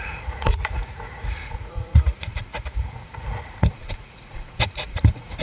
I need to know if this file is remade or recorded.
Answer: remade